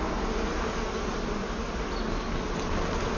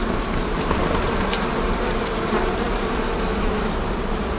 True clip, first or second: first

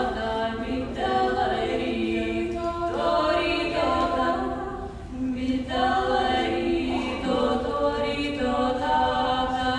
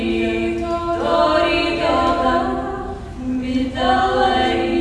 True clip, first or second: second